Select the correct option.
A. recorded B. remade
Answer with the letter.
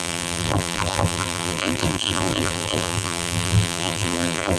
B